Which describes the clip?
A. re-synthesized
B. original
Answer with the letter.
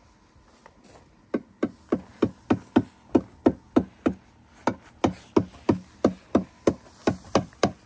B